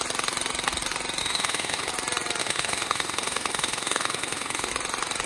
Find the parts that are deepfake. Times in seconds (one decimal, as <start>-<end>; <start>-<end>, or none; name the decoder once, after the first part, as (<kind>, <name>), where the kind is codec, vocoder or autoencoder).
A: 1.2-1.9 (autoencoder, DAC-VAE); 2.4-4.7